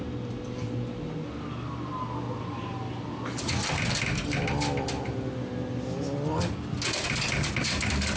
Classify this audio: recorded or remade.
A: recorded